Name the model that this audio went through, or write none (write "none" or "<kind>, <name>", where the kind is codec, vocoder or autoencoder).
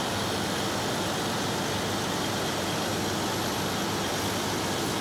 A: none